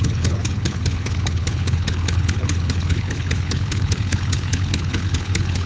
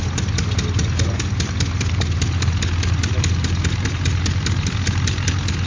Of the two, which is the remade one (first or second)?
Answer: first